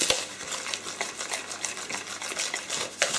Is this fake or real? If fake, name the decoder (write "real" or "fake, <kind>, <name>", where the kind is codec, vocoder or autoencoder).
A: real